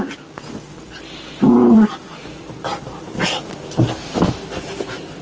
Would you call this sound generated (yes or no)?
no